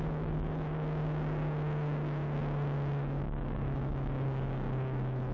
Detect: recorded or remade remade